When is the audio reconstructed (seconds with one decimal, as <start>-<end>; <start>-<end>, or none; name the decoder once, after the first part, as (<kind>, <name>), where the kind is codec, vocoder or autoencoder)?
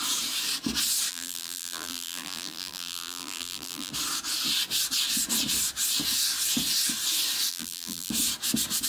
1.1-3.9 (vocoder, BigVGAN v2); 7.5-8.1